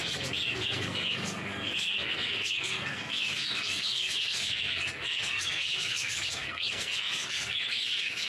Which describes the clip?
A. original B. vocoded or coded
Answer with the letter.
B